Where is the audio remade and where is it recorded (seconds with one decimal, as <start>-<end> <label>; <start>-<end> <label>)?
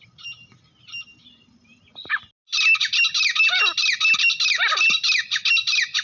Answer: 0.0-6.0 recorded